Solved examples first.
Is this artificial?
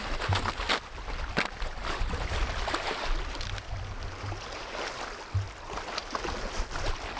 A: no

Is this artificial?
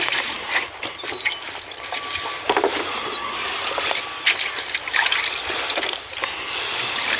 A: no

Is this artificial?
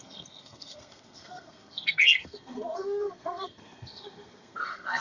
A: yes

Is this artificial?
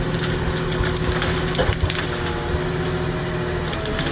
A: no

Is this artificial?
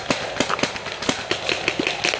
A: no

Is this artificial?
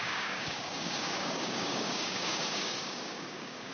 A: yes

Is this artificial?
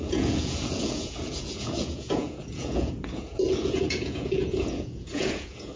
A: yes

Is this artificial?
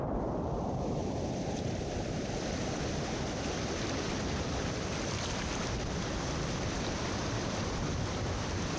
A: yes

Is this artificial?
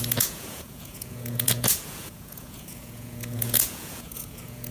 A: yes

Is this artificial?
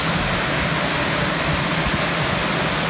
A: no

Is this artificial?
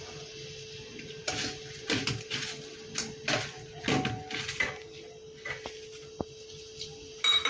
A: no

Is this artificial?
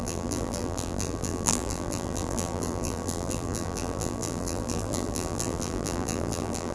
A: yes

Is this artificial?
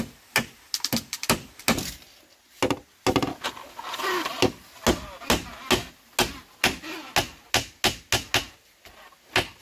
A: no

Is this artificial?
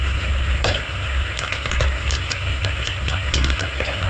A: yes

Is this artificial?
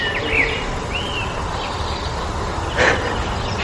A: no